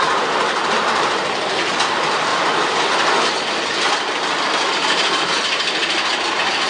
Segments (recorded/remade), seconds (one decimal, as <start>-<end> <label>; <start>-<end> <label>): 0.0-2.3 remade; 2.3-6.3 recorded; 6.3-6.7 remade